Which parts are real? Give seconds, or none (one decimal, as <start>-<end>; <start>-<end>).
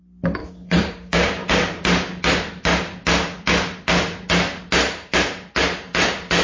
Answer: 0.0-0.4; 1.5-6.4